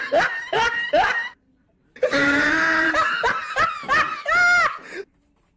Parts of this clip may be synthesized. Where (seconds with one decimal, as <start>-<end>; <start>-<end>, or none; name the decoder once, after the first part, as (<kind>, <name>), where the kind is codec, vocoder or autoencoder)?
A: 0.0-3.4 (vocoder, BigVGAN v2)